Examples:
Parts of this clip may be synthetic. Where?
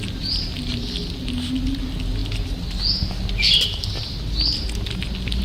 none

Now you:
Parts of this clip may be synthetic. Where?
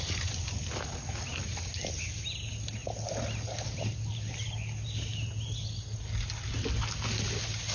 none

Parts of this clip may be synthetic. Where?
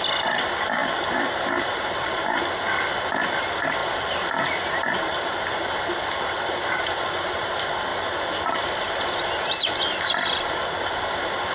none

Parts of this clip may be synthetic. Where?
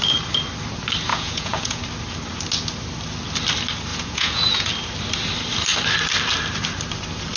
1.1-1.8 (vocoder, Vocos); 3.9-4.7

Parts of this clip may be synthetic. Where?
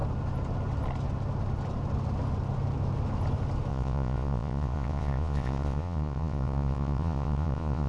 3.7-7.9 (vocoder, Vocos)